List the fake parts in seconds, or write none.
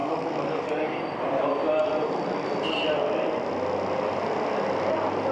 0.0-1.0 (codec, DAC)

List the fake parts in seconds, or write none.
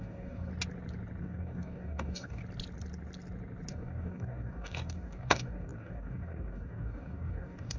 0.0-0.5 (codec, DAC); 1.2-2.4; 3.7-7.8